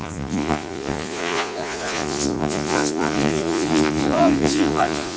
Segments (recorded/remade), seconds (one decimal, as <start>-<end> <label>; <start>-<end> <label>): 0.0-5.2 remade